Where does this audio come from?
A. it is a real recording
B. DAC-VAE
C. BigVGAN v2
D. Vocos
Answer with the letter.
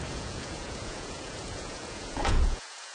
D